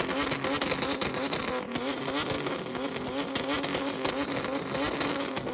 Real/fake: real